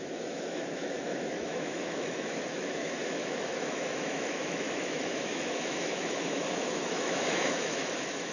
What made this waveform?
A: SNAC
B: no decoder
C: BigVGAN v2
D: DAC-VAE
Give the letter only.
D